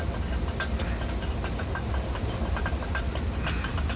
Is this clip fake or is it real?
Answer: real